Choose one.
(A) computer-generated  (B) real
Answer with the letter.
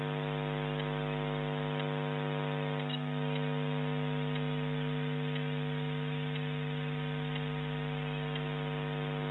B